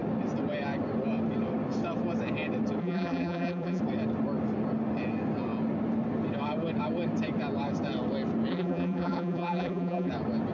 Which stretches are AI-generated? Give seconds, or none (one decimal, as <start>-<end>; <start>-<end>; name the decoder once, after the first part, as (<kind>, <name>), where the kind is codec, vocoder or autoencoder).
2.8-3.8 (vocoder, BigVGAN v2); 8.5-10.1